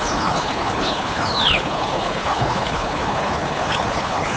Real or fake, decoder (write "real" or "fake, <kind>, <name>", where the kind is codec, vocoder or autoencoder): fake, codec, HILCodec